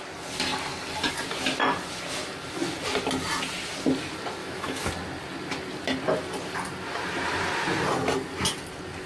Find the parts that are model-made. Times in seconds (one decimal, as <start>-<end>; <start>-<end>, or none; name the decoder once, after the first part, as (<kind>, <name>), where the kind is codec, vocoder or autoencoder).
4.4-4.9 (autoencoder, DAC-VAE)